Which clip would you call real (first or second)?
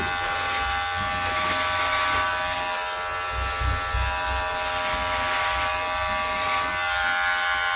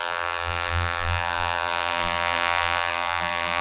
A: first